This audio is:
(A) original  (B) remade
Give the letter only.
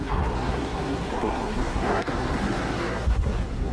B